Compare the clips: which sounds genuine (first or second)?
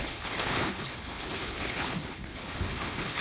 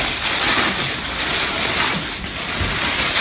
second